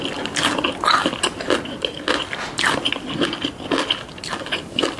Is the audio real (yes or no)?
yes